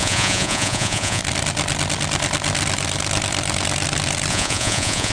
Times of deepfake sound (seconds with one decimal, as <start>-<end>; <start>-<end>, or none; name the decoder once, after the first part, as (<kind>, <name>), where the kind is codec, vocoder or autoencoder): 0.0-1.2 (vocoder, Vocos); 4.3-5.1